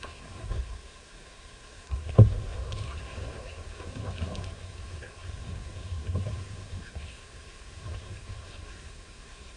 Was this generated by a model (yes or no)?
yes